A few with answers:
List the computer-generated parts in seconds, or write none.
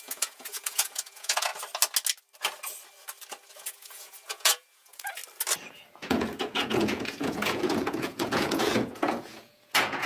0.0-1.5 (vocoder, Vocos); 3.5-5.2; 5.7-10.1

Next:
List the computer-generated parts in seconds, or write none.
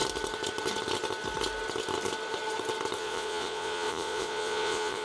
3.0-5.0 (vocoder, Vocos)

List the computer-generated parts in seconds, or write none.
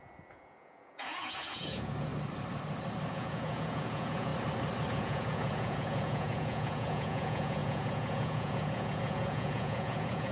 0.0-2.1 (vocoder, Vocos); 3.1-4.3; 4.9-10.3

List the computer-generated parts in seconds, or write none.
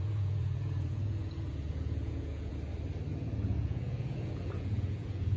0.0-2.5 (vocoder, Vocos); 3.1-5.4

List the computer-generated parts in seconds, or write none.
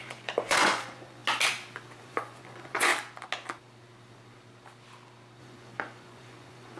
0.0-1.2 (vocoder, Vocos); 2.0-2.9; 5.4-6.8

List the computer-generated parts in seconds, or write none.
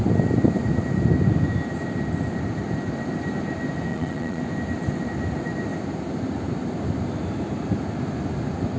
3.9-4.4 (vocoder, Vocos)